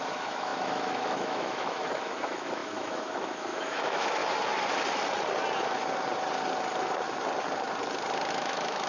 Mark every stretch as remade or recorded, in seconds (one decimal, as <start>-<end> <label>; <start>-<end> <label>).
0.0-4.2 remade; 4.2-8.3 recorded; 8.3-8.9 remade